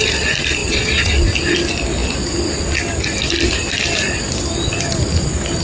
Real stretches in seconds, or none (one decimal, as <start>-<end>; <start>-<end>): 0.0-0.6; 1.1-5.6